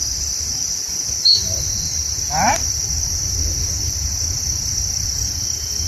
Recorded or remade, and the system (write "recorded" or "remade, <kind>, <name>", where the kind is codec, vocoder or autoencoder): remade, vocoder, BigVGAN v2